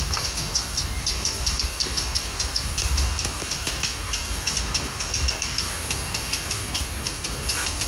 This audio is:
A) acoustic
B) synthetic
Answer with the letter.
B